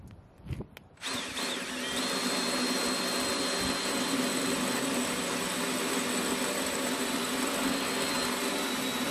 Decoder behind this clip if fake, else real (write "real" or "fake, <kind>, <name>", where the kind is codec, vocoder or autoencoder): real